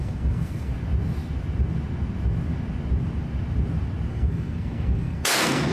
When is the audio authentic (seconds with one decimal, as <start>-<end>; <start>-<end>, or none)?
0.7-4.1